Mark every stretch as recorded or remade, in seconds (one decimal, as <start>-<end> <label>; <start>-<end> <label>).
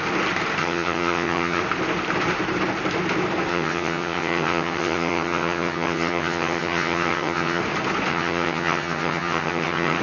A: 0.0-0.6 recorded; 0.6-1.6 remade; 1.6-3.5 recorded; 3.5-7.6 remade; 7.6-8.1 recorded; 8.1-10.0 remade